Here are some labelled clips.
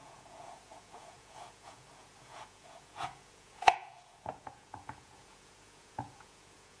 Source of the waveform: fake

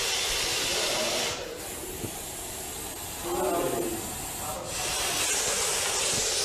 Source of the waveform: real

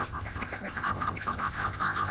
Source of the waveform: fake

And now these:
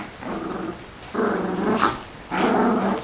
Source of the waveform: real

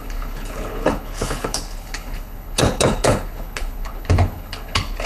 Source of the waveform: fake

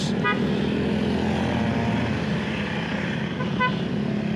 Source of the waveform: real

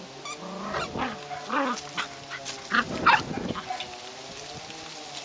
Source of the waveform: real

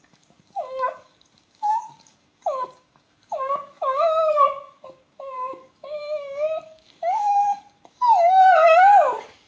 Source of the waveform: fake